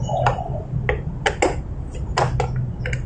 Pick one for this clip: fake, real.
real